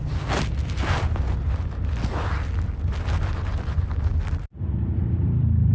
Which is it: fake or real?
real